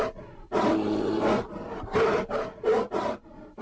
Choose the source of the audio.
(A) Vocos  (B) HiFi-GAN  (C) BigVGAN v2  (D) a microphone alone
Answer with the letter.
D